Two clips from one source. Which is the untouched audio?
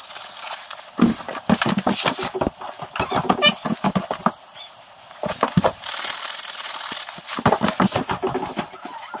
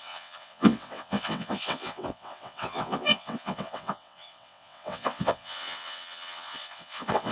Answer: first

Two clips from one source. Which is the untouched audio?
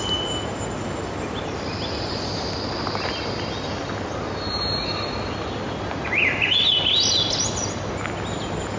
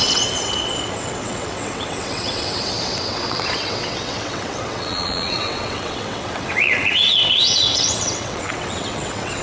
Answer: first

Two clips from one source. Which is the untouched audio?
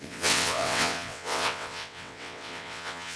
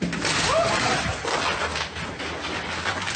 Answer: second